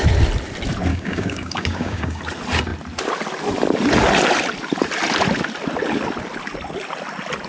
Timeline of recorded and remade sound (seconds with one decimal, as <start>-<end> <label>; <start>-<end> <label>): 0.0-0.9 recorded; 0.9-2.2 remade; 2.2-7.5 recorded